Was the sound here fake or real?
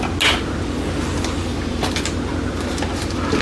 real